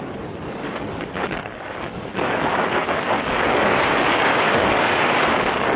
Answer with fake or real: fake